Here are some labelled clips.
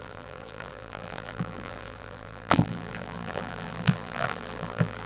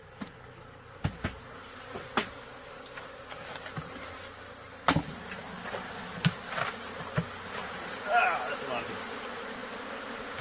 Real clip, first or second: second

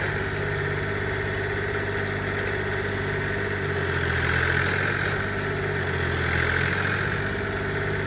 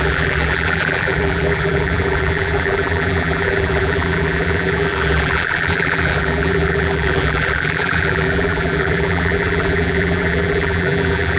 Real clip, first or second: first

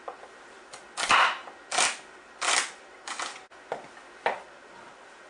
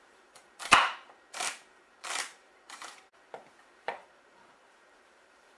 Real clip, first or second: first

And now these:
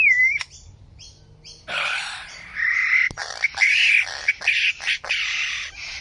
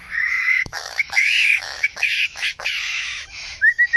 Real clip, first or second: first